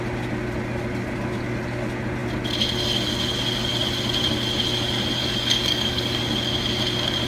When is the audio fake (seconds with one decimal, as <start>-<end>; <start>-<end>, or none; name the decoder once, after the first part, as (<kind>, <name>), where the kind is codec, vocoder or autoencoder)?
5.2-6.2 (codec, DAC)